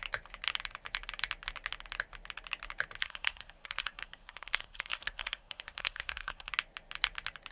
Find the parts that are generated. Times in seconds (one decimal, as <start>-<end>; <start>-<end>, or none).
3.0-6.5